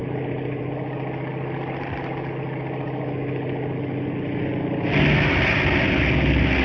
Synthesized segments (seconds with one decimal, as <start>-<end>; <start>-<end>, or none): none